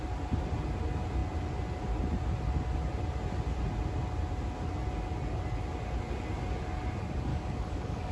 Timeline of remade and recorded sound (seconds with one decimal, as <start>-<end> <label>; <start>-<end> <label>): 0.0-7.3 recorded; 7.3-8.1 remade